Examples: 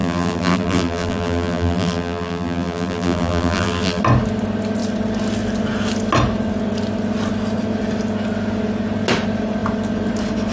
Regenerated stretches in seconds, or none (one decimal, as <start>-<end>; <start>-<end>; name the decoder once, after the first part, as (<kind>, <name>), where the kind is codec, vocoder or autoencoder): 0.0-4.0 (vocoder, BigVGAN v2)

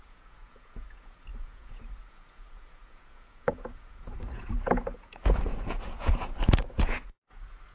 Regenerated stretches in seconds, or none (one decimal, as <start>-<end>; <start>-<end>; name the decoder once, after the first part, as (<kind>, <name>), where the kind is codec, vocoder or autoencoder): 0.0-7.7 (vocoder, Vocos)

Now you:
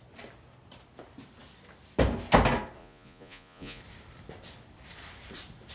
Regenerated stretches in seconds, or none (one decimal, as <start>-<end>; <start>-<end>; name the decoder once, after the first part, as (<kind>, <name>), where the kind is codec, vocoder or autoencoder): 2.8-3.8 (vocoder, Vocos)

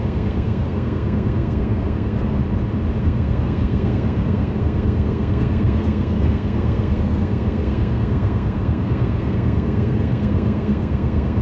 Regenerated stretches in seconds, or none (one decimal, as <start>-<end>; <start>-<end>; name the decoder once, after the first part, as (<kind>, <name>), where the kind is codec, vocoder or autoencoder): 0.0-2.4 (codec, SNAC); 3.0-11.4